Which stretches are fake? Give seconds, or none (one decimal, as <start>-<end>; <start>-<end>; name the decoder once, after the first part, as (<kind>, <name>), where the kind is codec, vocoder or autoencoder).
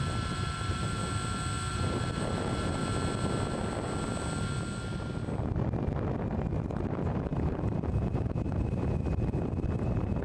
0.0-1.0 (vocoder, BigVGAN v2); 1.7-2.8; 6.5-10.2